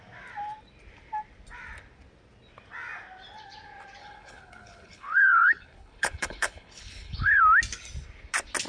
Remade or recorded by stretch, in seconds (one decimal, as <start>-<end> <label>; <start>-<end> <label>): 0.0-4.0 recorded; 4.0-7.4 remade; 7.4-8.7 recorded